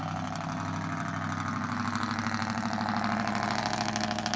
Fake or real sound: real